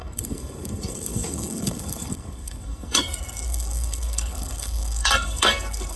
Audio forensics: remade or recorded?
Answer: remade